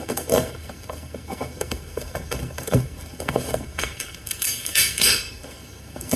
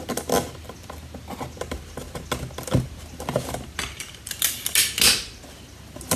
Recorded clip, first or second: second